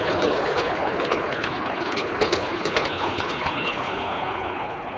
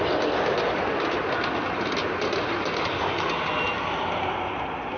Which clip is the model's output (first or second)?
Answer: first